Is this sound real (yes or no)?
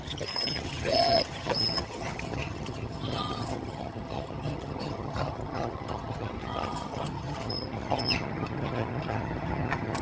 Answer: no